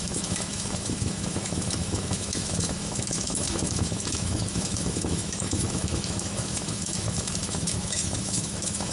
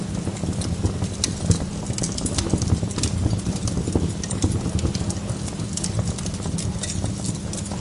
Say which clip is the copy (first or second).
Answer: first